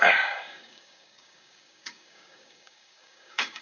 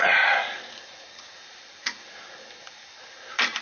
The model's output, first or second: first